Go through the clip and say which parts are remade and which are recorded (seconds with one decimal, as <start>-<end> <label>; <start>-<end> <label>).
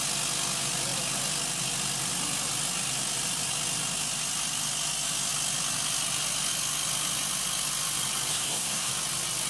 0.0-8.3 recorded; 8.3-8.9 remade; 8.9-9.5 recorded